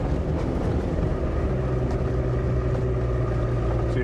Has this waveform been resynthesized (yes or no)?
no